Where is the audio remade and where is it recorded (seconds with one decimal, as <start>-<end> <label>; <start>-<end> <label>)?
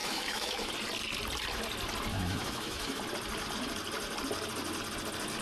0.0-0.7 remade; 0.7-2.1 recorded; 2.1-3.0 remade; 3.0-5.4 recorded